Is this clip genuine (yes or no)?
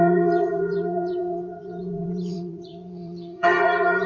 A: no